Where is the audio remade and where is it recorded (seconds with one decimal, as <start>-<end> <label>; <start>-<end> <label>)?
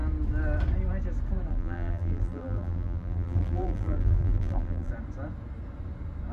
0.0-1.5 recorded; 1.5-4.9 remade; 4.9-6.3 recorded